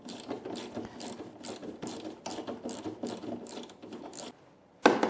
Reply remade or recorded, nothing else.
recorded